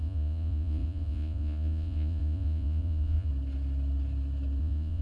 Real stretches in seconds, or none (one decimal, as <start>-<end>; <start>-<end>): 3.3-4.6